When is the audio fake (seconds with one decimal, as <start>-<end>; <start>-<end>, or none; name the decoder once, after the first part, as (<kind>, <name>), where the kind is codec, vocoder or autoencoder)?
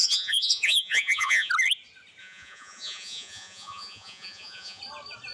0.0-1.5 (vocoder, Vocos); 2.2-4.8